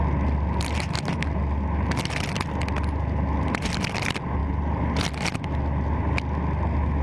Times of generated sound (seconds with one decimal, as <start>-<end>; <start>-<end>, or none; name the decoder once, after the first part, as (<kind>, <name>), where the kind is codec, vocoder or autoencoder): none